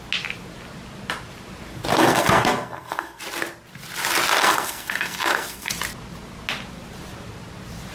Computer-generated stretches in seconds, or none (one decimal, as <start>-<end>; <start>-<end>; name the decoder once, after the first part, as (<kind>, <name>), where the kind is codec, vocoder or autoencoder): 1.9-3.2 (codec, SNAC); 4.4-5.7